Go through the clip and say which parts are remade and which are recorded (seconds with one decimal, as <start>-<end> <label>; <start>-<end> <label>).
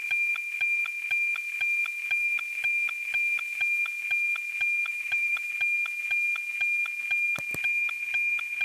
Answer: 0.0-4.9 recorded; 4.9-5.5 remade; 5.5-8.6 recorded